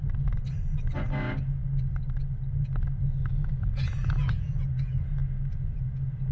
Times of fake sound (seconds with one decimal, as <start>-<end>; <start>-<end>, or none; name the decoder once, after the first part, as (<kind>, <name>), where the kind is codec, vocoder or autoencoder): 3.3-6.3 (vocoder, Vocos)